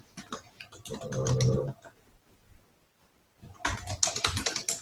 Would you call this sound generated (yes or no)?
no